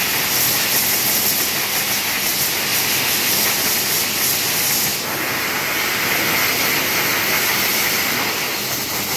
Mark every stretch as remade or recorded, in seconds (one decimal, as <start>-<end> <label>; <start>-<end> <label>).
0.0-9.2 recorded